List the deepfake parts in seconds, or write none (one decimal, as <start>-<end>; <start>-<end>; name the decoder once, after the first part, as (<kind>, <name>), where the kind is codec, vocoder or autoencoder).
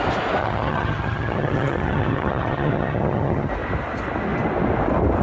0.4-3.5 (vocoder, HiFi-GAN)